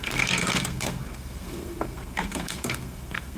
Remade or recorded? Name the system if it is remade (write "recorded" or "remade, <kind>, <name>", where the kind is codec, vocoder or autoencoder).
remade, codec, SNAC